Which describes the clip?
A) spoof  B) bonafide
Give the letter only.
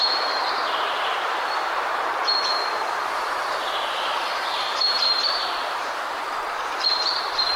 A